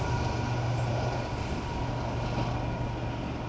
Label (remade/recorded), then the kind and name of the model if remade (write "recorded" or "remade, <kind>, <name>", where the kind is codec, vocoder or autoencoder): recorded